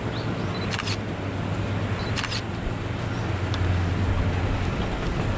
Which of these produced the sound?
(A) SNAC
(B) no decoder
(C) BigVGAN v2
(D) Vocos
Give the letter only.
B